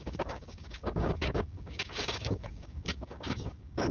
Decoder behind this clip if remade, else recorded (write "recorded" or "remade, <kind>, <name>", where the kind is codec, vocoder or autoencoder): remade, codec, DAC